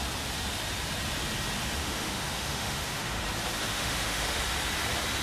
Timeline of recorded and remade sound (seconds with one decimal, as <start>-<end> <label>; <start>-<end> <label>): 0.0-1.8 recorded; 1.8-3.2 remade; 3.2-3.7 recorded; 3.7-4.4 remade; 4.4-5.2 recorded